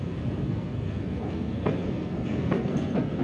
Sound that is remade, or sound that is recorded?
remade